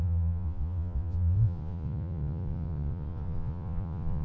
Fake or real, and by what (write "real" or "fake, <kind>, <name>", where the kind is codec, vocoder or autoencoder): fake, vocoder, Vocos